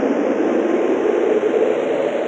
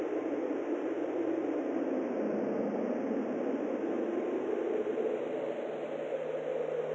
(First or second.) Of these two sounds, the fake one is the first